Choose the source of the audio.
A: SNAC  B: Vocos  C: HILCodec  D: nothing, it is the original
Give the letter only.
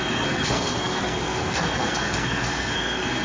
A